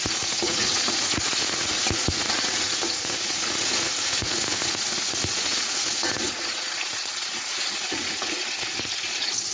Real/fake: fake